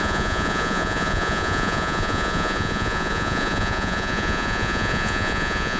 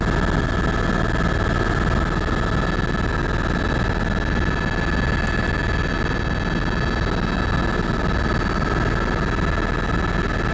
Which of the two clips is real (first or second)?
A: second